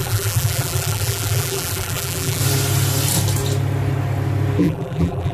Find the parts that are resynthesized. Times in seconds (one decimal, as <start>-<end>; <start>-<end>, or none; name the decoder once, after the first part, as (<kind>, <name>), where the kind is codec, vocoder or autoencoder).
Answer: 0.0-2.4 (vocoder, BigVGAN v2); 4.6-5.3